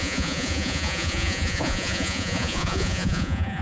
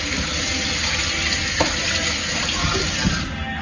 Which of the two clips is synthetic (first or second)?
first